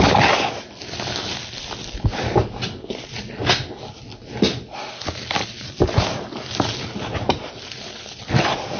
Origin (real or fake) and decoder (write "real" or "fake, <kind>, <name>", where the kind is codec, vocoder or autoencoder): real